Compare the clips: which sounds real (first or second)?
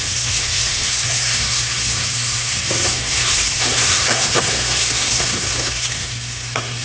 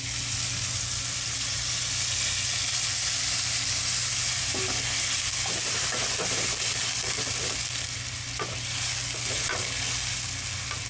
second